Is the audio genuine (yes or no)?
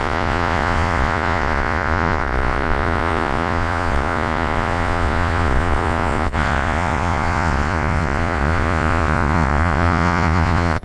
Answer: no